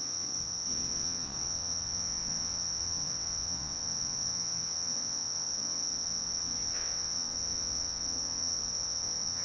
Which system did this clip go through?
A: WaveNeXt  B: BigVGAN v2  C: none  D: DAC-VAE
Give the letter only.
A